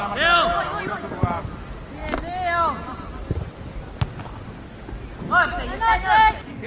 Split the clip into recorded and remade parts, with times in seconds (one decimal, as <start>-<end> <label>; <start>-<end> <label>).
0.0-6.7 recorded